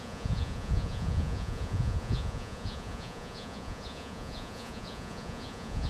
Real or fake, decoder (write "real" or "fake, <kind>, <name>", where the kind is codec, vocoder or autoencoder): fake, vocoder, Vocos